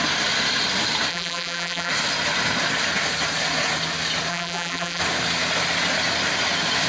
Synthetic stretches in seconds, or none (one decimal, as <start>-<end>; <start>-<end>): 1.1-1.9; 4.3-5.0